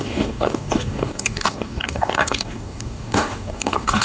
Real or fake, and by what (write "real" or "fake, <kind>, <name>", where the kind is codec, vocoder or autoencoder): fake, codec, DAC